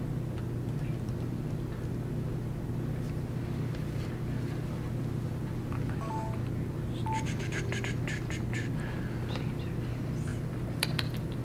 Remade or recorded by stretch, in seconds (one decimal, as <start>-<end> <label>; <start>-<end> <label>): 0.0-10.3 recorded; 10.3-11.4 remade